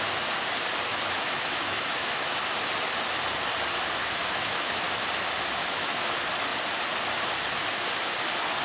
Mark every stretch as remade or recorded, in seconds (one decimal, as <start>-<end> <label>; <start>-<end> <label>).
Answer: 0.0-0.9 recorded; 0.9-2.4 remade; 2.4-4.0 recorded; 4.0-4.8 remade; 4.8-5.6 recorded; 5.6-6.1 remade; 6.1-8.6 recorded

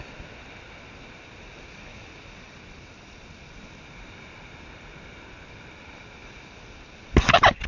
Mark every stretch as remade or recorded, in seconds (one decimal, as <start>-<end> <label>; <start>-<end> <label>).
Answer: 0.0-7.7 recorded

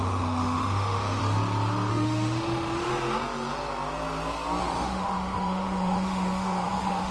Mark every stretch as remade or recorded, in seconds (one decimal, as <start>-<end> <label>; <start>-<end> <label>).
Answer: 0.0-1.2 remade; 1.2-1.9 recorded; 1.9-2.9 remade; 2.9-4.6 recorded; 4.6-7.1 remade

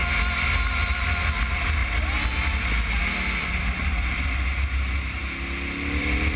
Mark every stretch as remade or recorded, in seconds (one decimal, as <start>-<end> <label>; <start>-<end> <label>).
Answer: 0.0-6.4 recorded